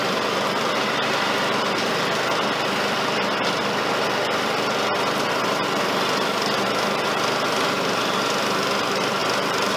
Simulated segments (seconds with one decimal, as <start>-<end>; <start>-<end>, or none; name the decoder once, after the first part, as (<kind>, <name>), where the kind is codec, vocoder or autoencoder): 9.2-9.8 (vocoder, BigVGAN v2)